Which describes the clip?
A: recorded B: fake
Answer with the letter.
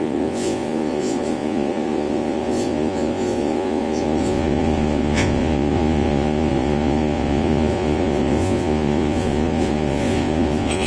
B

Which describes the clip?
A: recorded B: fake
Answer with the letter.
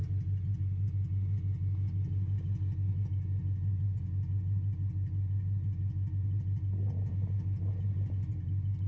A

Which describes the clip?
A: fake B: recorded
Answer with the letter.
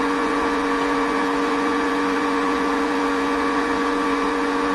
A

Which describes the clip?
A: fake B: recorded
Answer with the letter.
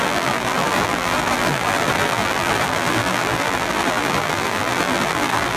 A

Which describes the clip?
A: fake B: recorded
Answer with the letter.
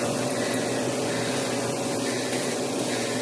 A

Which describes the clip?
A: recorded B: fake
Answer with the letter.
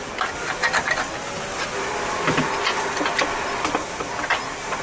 A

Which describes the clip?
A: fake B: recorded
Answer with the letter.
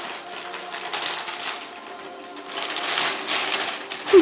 B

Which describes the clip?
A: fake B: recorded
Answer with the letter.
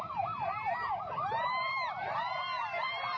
A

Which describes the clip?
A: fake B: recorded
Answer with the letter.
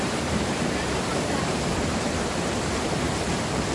A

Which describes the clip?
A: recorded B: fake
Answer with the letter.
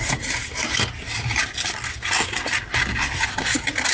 A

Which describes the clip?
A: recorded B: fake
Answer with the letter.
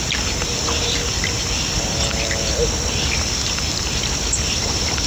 A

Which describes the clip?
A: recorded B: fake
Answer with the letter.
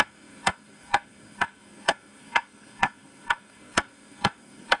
B